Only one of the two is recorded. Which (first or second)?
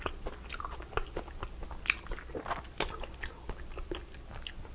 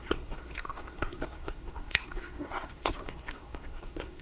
first